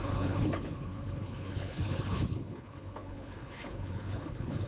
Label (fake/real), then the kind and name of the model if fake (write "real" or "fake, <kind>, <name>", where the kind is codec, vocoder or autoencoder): fake, codec, HILCodec